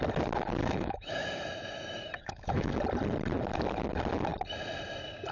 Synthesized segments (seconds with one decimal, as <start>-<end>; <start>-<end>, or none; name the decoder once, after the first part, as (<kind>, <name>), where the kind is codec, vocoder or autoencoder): 0.6-2.8 (autoencoder, DAC-VAE)

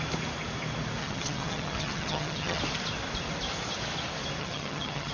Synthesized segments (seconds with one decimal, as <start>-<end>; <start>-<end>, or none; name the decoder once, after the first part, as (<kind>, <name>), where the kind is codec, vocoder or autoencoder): 1.0-2.6 (vocoder, HiFi-GAN); 4.4-5.1

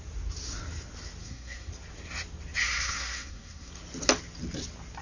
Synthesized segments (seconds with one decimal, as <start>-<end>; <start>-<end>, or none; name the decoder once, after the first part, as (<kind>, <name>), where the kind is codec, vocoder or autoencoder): 1.2-1.7 (codec, SNAC); 2.6-3.7

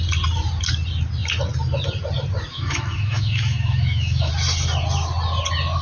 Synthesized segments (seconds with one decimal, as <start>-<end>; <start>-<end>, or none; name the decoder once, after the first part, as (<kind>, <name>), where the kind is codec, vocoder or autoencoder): 2.5-4.3 (autoencoder, DAC-VAE)

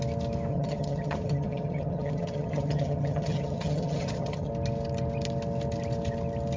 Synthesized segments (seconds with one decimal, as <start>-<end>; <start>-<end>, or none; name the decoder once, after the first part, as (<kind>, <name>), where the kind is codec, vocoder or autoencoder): 0.5-4.5 (vocoder, HiFi-GAN)

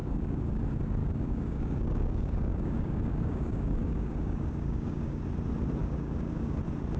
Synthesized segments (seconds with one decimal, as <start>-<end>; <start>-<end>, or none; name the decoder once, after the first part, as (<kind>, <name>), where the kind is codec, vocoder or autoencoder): 0.0-0.6 (codec, DAC); 1.0-5.2; 5.8-6.6

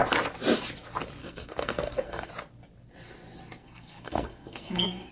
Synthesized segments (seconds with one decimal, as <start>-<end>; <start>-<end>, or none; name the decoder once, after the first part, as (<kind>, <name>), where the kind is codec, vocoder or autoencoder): 1.2-2.3 (codec, SNAC); 3.6-5.1